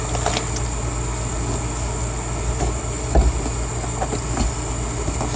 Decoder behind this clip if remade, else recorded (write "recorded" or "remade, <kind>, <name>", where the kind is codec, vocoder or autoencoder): recorded